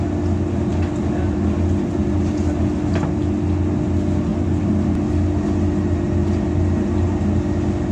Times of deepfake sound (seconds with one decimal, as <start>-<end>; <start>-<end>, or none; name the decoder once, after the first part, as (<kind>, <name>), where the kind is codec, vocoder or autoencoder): none